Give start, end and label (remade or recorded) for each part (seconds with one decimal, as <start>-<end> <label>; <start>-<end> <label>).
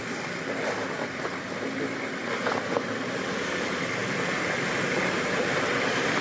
0.0-6.2 recorded